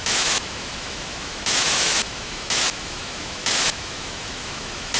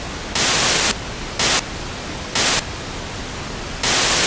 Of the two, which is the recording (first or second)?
second